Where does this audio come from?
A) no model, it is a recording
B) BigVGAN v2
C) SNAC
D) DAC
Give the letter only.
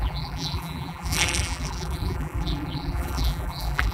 B